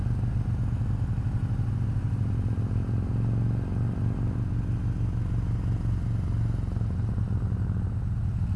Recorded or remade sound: recorded